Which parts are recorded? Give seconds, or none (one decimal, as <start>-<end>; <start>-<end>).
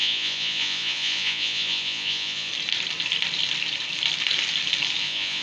2.5-5.0